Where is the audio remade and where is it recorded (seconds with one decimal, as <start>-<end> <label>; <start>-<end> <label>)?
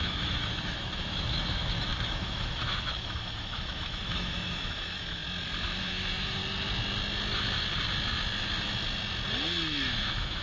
0.0-5.2 remade; 5.2-5.8 recorded; 5.8-6.4 remade; 6.4-10.0 recorded; 10.0-10.4 remade